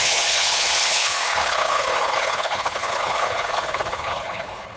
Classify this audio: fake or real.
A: fake